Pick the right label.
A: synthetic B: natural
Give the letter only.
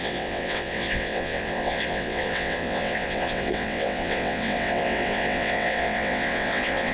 A